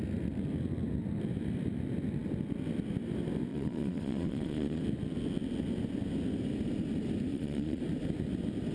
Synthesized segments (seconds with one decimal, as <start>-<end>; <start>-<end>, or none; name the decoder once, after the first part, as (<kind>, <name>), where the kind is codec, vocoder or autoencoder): 3.5-4.8 (vocoder, Vocos); 7.3-7.8

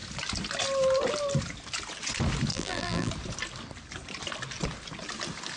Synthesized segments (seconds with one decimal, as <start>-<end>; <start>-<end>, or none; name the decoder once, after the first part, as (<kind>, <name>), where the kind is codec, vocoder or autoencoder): 2.5-3.1 (vocoder, BigVGAN v2)

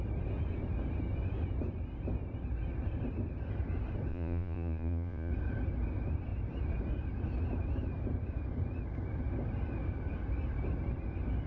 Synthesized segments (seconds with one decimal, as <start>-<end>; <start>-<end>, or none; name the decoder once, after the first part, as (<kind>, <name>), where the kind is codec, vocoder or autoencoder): 4.1-5.3 (vocoder, Vocos)

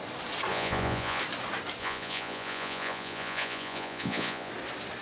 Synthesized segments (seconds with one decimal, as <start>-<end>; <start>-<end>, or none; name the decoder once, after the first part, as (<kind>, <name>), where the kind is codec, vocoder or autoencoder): 0.5-1.2 (vocoder, Vocos); 1.8-4.5

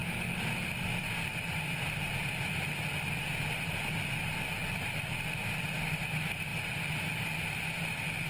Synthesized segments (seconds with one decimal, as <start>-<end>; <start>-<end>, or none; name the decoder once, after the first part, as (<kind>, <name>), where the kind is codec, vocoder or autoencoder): 5.4-6.1 (vocoder, BigVGAN v2); 6.5-7.5

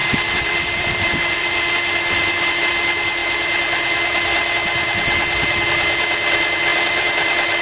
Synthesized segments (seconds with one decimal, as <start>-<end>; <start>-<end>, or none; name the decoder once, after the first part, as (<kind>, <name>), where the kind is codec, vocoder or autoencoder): 0.0-2.7 (vocoder, BigVGAN v2); 6.7-7.6

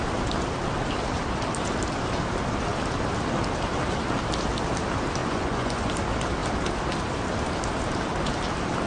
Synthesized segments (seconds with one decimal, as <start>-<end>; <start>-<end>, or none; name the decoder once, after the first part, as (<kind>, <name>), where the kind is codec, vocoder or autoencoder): 5.2-5.9 (vocoder, Vocos)